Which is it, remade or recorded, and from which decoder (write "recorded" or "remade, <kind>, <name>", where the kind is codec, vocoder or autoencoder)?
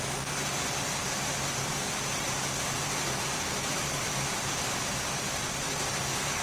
recorded